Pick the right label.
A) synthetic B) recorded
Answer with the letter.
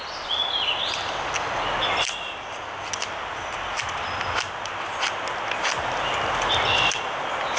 B